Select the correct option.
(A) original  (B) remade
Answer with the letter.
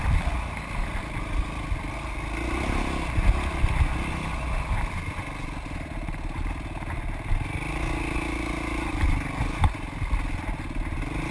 A